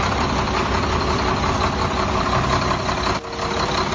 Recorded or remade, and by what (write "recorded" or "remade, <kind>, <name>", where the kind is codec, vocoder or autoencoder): recorded